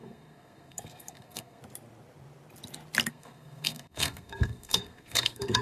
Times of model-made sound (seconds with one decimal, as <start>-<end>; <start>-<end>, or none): 0.0-1.6; 3.1-5.6

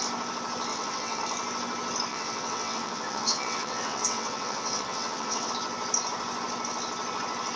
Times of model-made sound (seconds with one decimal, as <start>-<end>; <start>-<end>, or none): 0.7-1.2; 2.1-5.5

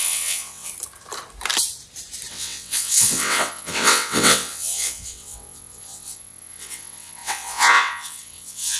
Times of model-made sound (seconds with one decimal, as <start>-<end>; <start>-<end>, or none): 0.0-0.7; 2.3-8.8

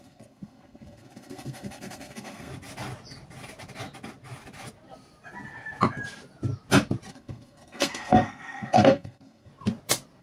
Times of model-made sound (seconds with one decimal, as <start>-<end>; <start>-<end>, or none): 0.0-2.5; 7.1-9.5

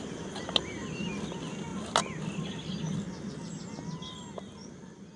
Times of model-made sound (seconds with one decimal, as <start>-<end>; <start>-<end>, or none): none

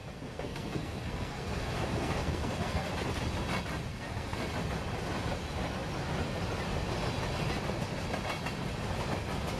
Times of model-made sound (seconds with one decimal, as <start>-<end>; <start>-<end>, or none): 0.0-2.9; 3.9-4.5

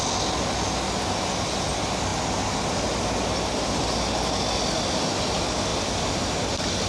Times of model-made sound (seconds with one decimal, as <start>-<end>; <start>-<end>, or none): 5.7-6.9

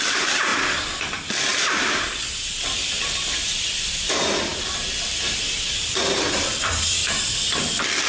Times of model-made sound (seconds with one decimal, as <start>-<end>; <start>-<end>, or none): 0.0-8.1